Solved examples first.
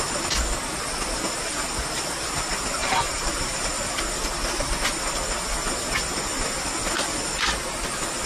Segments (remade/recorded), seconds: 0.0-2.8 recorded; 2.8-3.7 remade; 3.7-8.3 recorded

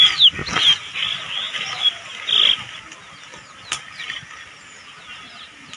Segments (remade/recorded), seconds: 0.0-5.8 recorded

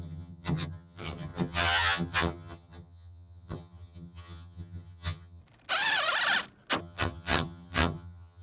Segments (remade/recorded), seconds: 0.0-5.4 remade; 5.4-6.8 recorded; 6.8-8.4 remade

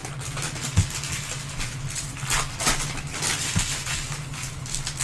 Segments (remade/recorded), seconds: 0.0-5.0 recorded

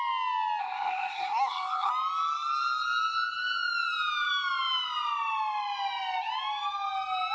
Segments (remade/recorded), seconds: 0.0-0.6 recorded; 0.6-1.9 remade; 1.9-7.3 recorded